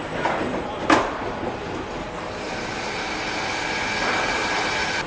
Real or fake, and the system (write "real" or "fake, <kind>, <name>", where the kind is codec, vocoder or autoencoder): real